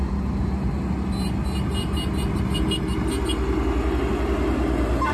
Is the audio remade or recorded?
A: recorded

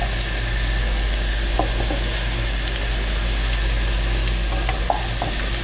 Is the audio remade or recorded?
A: recorded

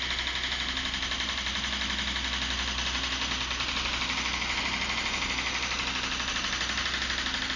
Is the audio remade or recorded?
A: recorded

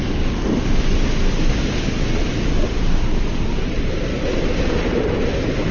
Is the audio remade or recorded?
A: recorded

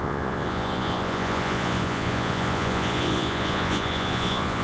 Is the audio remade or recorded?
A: remade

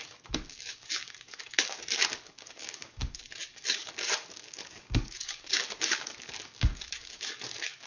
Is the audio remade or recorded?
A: remade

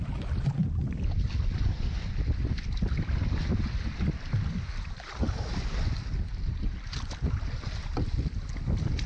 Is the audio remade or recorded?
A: recorded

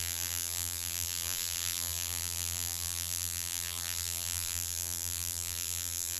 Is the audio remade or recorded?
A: remade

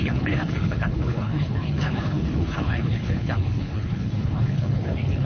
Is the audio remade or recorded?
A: remade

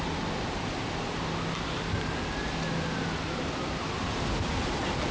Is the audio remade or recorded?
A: recorded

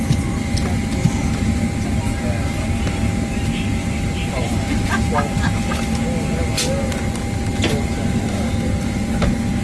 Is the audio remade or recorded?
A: recorded